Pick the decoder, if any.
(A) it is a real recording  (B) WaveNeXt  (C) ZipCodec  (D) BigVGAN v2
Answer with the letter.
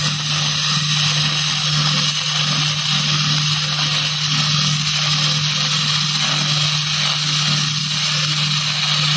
A